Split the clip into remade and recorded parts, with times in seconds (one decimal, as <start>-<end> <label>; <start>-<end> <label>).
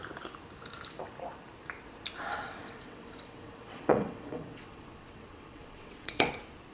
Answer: 0.0-2.3 recorded; 2.3-6.3 remade; 6.3-6.7 recorded